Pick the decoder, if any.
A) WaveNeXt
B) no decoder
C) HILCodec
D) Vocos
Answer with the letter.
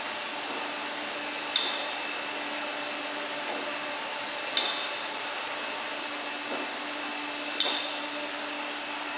B